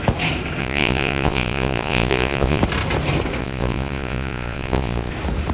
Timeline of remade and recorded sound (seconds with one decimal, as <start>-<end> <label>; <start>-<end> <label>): 0.0-0.6 recorded; 0.6-2.6 remade; 2.6-3.4 recorded; 3.4-5.1 remade; 5.1-5.5 recorded